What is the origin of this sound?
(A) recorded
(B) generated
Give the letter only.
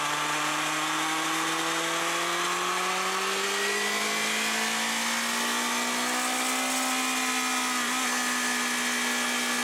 A